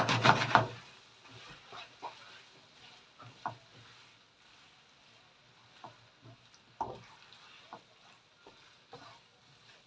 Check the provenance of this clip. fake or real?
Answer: real